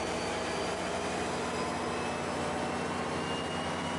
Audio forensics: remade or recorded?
recorded